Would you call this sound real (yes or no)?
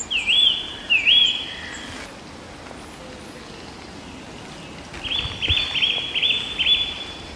yes